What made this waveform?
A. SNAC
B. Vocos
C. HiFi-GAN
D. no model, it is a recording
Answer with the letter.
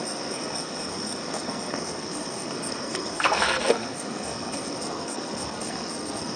A